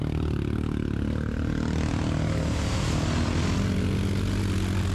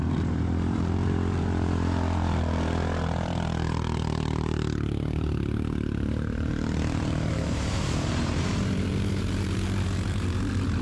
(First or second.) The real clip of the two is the first